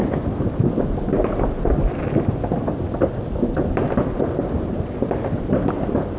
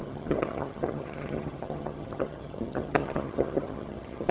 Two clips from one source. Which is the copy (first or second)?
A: second